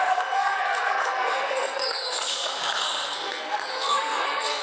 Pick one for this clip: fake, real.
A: fake